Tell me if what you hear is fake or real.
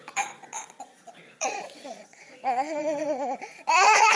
fake